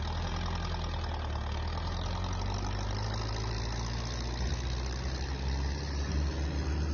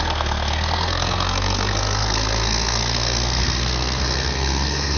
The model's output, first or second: second